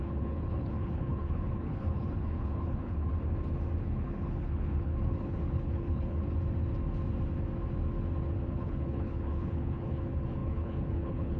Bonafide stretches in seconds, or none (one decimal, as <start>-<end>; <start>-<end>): 3.1-3.8; 6.2-8.5